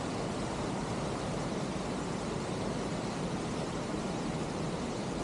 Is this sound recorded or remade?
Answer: remade